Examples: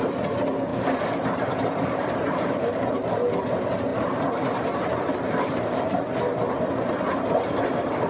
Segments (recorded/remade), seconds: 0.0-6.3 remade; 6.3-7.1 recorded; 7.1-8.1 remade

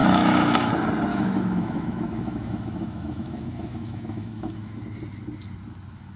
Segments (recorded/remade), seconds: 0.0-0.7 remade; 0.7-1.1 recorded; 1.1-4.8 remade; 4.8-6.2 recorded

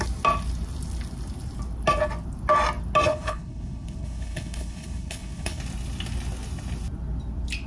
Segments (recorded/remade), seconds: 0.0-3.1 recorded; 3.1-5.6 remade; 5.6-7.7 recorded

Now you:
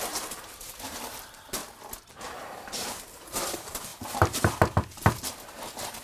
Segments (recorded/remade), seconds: 0.0-1.6 remade; 1.6-2.4 recorded; 2.4-5.0 remade; 5.0-6.0 recorded